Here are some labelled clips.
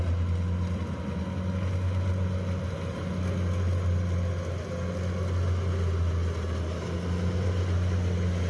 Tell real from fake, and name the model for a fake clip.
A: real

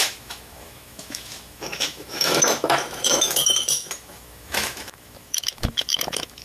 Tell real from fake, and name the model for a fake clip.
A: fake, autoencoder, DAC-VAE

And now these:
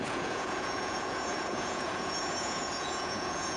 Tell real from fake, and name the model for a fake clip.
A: fake, vocoder, Vocos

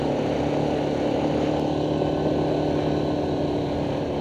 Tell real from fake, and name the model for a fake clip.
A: real